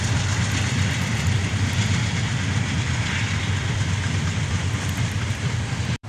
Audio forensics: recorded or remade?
remade